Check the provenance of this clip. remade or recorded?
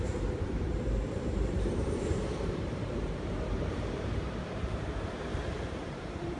remade